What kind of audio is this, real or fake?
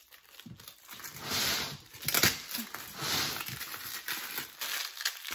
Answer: real